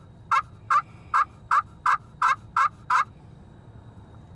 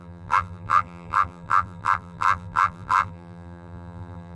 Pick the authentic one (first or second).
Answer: first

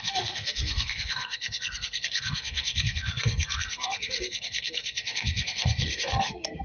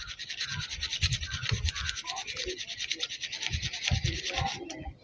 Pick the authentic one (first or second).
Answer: second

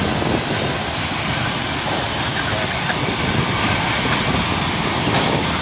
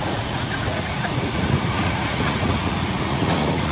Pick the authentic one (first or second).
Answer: first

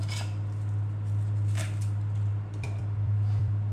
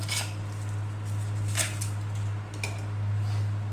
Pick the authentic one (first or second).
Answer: second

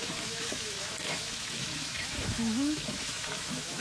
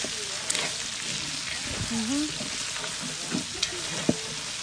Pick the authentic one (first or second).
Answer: second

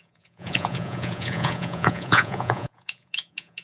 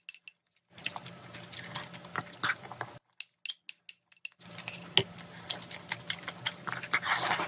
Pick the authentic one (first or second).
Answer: second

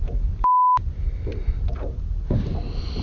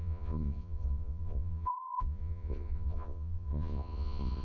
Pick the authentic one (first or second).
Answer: first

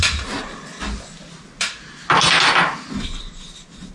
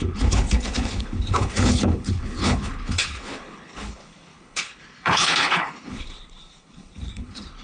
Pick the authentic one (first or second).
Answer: first